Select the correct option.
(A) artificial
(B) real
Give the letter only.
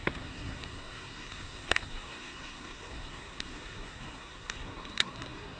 A